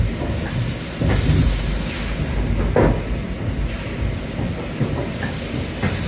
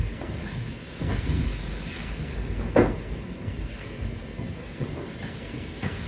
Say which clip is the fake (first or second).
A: second